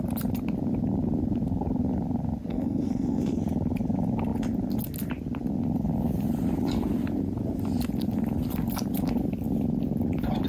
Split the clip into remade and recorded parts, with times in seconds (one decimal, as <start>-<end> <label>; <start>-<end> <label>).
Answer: 0.0-2.5 recorded; 2.5-3.4 remade; 3.4-10.5 recorded